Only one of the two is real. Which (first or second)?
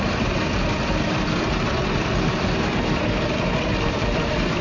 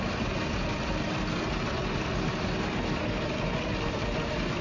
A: second